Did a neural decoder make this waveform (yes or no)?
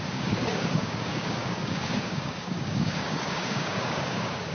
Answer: yes